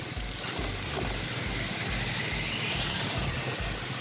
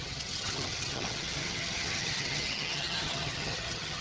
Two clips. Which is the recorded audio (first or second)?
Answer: first